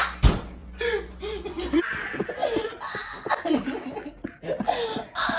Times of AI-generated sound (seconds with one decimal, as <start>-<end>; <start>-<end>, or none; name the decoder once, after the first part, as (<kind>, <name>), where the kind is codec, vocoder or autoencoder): 0.6-1.8 (vocoder, Vocos)